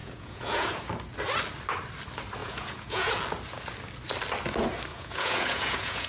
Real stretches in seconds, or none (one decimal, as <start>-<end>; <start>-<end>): 0.9-2.4; 3.1-4.9